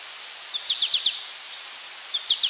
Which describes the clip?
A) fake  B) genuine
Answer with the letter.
B